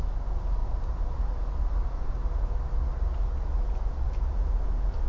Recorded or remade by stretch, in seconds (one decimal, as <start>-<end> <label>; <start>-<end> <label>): 0.0-5.1 recorded